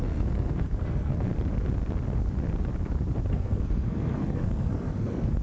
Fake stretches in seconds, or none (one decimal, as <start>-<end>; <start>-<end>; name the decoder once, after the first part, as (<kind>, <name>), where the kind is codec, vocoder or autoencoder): 0.0-1.3 (codec, SNAC); 3.3-5.4